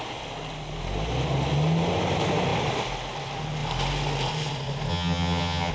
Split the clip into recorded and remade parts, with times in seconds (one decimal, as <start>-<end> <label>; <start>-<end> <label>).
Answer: 0.0-4.9 recorded; 4.9-5.7 remade